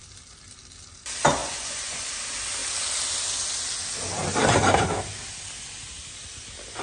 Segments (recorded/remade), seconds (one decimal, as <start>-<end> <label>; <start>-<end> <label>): 0.0-1.4 recorded; 1.4-2.0 remade; 2.0-6.8 recorded